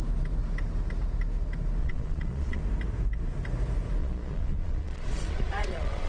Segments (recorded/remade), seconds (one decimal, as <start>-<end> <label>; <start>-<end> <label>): 0.0-1.8 recorded; 1.8-2.6 remade; 2.6-4.0 recorded; 4.0-6.1 remade